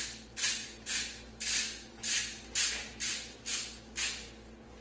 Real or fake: real